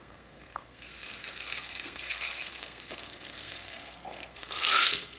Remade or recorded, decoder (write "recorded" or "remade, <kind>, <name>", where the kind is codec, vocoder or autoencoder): remade, codec, SNAC